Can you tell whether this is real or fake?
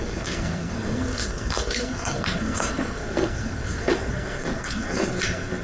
fake